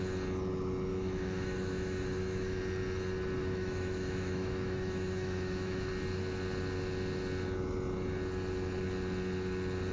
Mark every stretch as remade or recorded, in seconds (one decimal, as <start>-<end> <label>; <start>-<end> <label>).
0.0-0.9 recorded; 0.9-2.6 remade; 2.6-3.4 recorded; 3.4-5.9 remade; 5.9-9.9 recorded